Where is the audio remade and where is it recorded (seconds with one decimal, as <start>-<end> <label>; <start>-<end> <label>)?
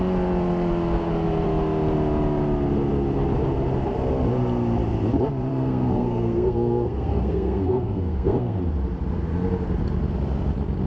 0.0-5.5 recorded; 5.5-8.6 remade; 8.6-10.9 recorded